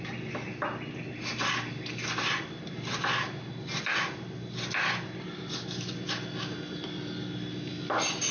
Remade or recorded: recorded